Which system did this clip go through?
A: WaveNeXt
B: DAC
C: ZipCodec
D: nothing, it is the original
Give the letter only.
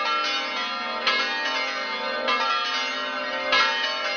D